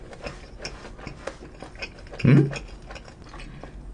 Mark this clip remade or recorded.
recorded